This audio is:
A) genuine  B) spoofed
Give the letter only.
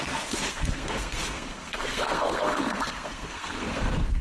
B